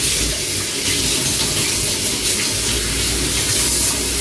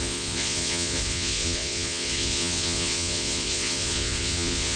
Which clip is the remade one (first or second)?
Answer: second